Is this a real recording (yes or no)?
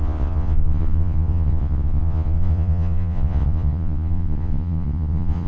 no